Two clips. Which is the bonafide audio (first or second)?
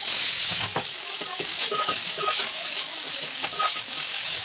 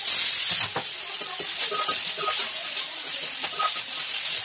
second